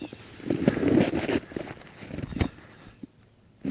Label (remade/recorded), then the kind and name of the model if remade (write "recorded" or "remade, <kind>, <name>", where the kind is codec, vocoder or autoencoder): recorded